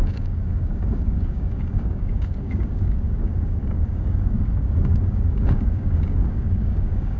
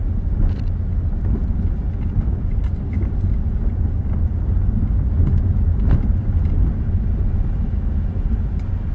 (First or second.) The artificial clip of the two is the first